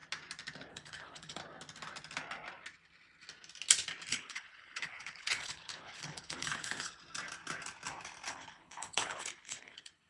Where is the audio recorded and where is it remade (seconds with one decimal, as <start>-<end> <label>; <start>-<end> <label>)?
0.0-0.7 recorded; 0.7-1.4 remade; 1.4-4.1 recorded; 4.1-7.0 remade; 7.0-8.3 recorded; 8.3-10.1 remade